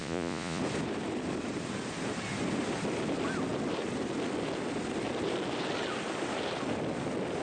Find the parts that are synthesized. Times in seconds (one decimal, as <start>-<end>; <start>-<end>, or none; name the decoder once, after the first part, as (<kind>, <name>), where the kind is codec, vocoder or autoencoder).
0.0-0.6 (vocoder, Vocos)